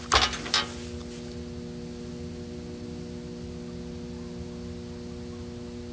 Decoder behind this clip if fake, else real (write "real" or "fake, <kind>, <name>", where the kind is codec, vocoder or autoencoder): real